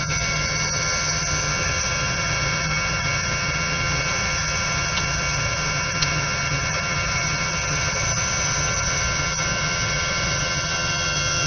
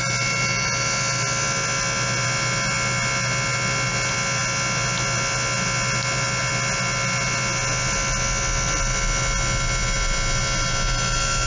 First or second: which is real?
second